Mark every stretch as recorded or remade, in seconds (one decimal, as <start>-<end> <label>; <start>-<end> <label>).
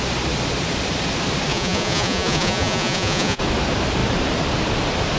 0.0-1.5 recorded; 1.5-3.4 remade; 3.4-5.2 recorded